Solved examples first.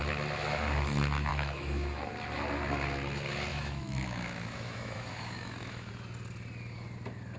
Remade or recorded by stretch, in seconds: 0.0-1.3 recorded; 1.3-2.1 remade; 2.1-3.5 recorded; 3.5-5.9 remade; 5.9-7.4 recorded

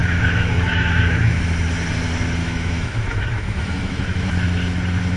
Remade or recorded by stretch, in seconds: 0.0-1.4 remade; 1.4-2.4 recorded; 2.4-4.3 remade; 4.3-5.2 recorded

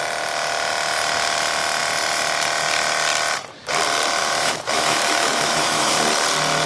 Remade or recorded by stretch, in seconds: 0.0-4.2 recorded; 4.2-5.9 remade; 5.9-6.7 recorded

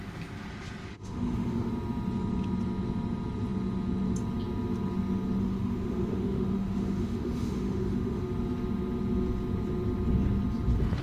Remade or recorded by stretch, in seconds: 0.0-0.9 recorded; 0.9-1.7 remade; 1.7-5.4 recorded; 5.4-8.2 remade; 8.2-11.0 recorded

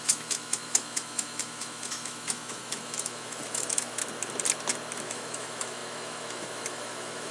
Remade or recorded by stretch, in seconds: 0.0-4.0 remade; 4.0-5.0 recorded; 5.0-7.3 remade

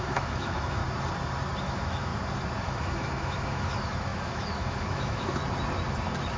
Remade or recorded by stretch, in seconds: 0.0-0.8 remade; 0.8-1.6 recorded; 1.6-2.1 remade; 2.1-2.6 recorded; 2.6-5.4 remade; 5.4-6.4 recorded

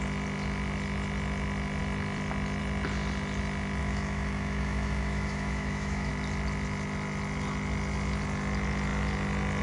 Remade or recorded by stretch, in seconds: 0.0-3.8 recorded; 3.8-6.1 remade; 6.1-9.6 recorded